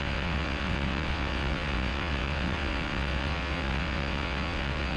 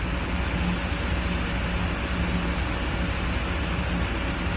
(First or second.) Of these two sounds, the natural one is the second